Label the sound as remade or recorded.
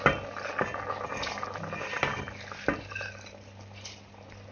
recorded